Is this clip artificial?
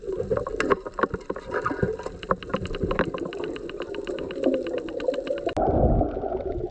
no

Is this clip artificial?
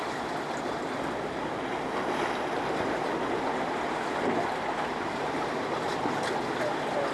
no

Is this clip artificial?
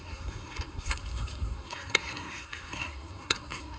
yes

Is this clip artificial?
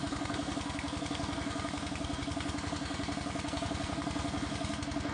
yes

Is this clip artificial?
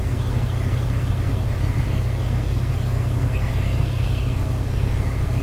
yes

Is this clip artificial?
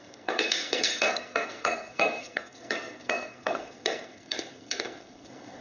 yes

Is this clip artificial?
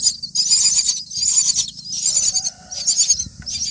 no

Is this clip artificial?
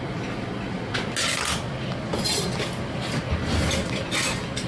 no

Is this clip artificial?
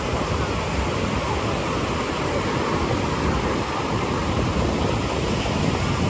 no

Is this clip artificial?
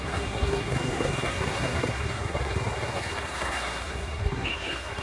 yes